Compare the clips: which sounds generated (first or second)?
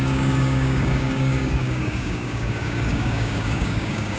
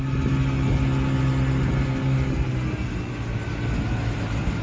first